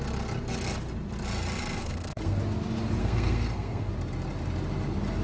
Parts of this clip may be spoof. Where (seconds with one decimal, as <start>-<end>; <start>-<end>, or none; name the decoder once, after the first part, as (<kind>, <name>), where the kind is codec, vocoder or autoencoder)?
1.8-2.4 (codec, SNAC); 3.0-3.9